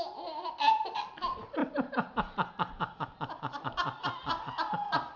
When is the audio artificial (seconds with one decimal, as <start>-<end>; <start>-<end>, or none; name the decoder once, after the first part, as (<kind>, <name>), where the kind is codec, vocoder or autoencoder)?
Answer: 1.6-4.3 (vocoder, BigVGAN v2)